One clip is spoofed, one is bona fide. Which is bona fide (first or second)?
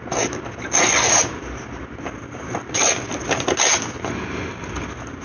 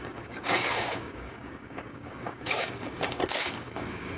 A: first